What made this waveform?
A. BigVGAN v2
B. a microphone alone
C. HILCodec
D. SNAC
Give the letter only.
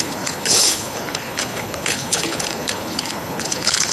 C